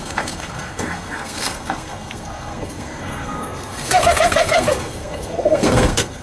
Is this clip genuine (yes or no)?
no